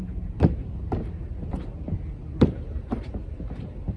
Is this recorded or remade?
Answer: remade